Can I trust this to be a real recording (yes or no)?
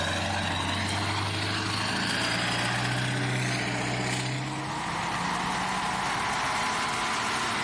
yes